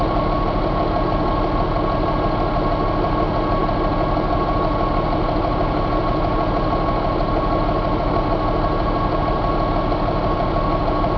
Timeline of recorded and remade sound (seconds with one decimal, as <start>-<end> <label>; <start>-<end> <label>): 0.0-11.2 recorded